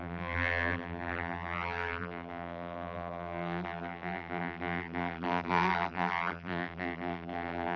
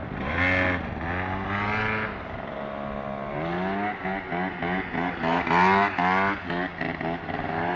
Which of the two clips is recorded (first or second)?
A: second